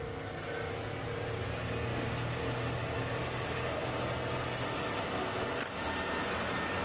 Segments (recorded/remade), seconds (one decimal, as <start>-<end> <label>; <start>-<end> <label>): 0.0-1.9 recorded; 1.9-2.8 remade; 2.8-6.8 recorded